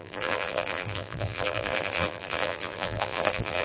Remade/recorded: remade